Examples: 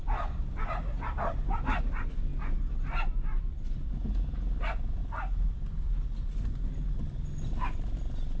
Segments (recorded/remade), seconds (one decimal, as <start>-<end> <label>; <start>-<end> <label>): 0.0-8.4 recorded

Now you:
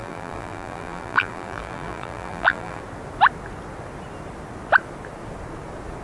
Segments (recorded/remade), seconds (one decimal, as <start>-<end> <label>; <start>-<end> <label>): 0.0-2.8 remade; 2.8-6.0 recorded

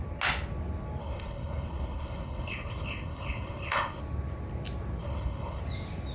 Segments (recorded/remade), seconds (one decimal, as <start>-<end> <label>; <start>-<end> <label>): 0.0-1.0 recorded; 1.0-4.0 remade; 4.0-5.0 recorded; 5.0-5.6 remade; 5.6-6.1 recorded

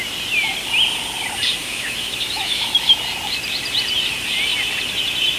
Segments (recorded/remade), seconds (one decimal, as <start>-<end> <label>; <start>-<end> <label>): 0.0-1.6 recorded; 1.6-3.0 remade; 3.0-5.4 recorded

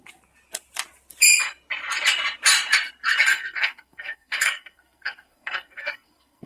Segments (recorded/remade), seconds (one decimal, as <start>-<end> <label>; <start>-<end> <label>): 0.0-3.3 recorded; 3.3-6.5 remade